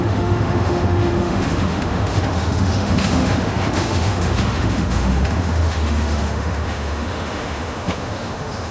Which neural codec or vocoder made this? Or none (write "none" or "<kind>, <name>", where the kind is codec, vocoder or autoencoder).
autoencoder, DAC-VAE